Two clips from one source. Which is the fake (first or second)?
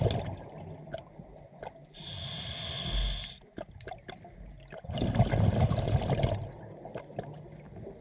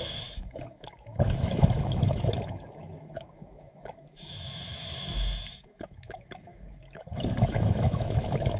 second